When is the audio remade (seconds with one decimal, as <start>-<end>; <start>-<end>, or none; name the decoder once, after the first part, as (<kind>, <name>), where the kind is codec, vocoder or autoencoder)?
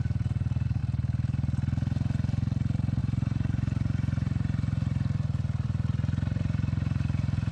0.0-0.8 (vocoder, BigVGAN v2); 3.0-7.5